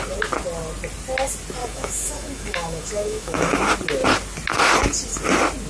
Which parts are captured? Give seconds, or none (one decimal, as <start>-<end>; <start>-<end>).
0.0-1.6; 3.6-5.7